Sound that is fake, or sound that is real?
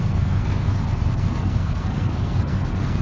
fake